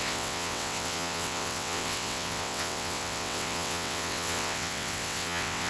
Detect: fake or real fake